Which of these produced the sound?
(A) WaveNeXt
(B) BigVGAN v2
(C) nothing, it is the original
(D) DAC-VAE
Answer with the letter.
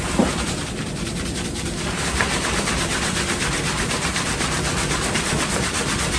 B